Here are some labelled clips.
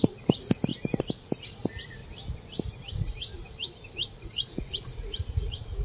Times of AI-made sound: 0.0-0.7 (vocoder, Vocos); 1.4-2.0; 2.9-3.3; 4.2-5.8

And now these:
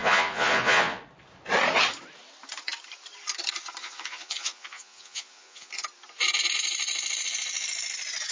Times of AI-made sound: 0.0-1.0 (vocoder, Vocos); 3.8-5.7

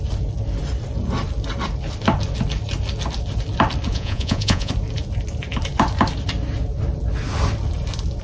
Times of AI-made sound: 3.9-4.7 (vocoder, Vocos)

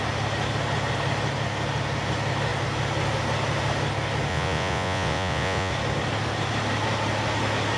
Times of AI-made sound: 4.3-5.7 (vocoder, Vocos)

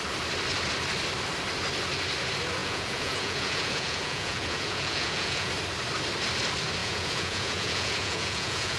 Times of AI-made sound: 2.6-5.5 (vocoder, Vocos); 6.8-8.8

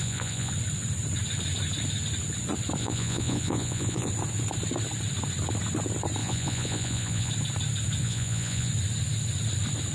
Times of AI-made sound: 0.0-0.5 (vocoder, Vocos); 2.8-4.1; 6.2-7.3; 8.0-8.7